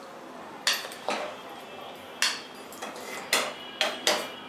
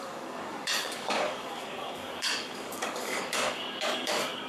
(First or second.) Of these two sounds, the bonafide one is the first